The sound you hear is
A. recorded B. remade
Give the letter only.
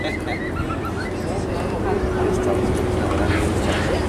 A